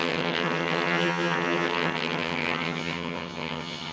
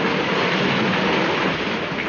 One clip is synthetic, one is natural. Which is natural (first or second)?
second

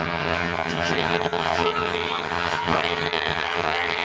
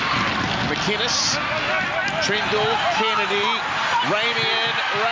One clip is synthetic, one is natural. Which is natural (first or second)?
second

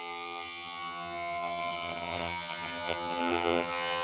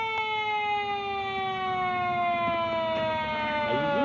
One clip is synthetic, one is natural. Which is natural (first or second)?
second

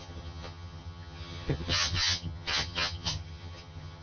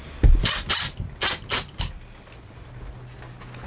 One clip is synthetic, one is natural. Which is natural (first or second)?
second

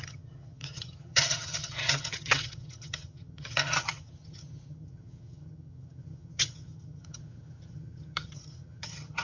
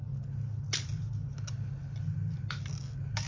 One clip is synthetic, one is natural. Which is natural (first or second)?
second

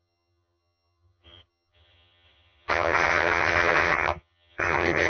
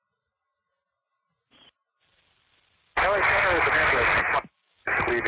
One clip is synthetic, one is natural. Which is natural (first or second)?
second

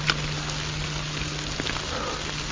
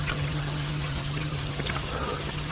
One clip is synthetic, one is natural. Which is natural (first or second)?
first